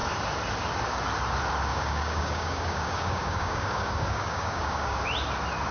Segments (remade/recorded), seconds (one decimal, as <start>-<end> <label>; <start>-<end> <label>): 0.0-1.7 recorded; 1.7-5.0 remade; 5.0-5.7 recorded